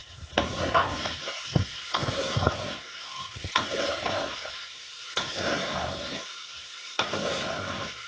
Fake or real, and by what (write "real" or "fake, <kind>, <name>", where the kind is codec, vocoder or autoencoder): fake, codec, SNAC